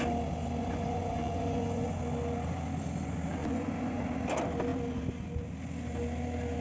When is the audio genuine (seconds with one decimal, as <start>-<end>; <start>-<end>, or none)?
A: 0.0-0.6; 2.0-3.4; 4.0-6.6